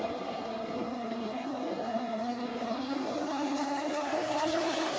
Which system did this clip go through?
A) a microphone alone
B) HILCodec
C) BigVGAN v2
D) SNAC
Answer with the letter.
D